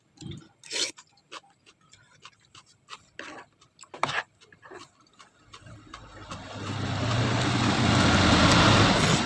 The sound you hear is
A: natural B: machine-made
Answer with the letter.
A